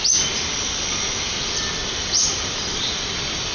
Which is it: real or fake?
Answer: real